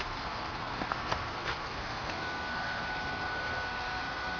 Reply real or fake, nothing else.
fake